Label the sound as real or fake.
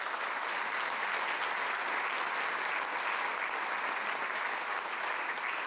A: real